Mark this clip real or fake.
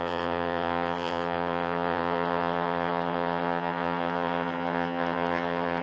fake